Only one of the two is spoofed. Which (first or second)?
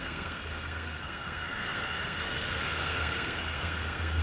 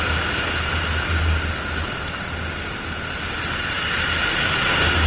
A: first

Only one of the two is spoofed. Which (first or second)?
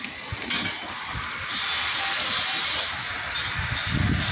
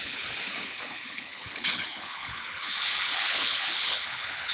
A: second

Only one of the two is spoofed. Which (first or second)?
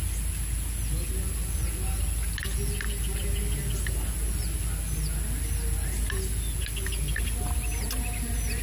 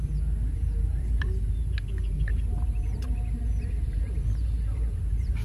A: second